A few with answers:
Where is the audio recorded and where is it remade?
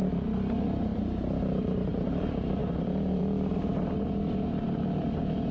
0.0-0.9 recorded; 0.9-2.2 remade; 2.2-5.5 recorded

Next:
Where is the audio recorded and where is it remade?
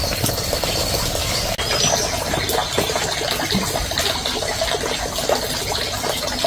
0.0-6.5 recorded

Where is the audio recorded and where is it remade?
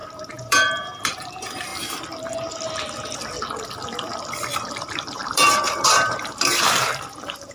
0.0-1.7 remade; 1.7-4.6 recorded; 4.6-7.5 remade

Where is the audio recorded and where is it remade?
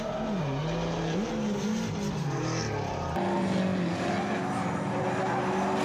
0.0-5.8 recorded